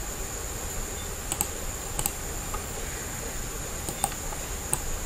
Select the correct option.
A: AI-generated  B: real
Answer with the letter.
B